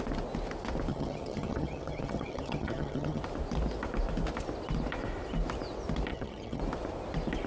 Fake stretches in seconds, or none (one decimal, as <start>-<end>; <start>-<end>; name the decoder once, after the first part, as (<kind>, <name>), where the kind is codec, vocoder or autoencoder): 0.9-3.2 (vocoder, HiFi-GAN); 6.1-6.6